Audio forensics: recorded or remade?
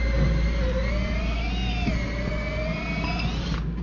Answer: recorded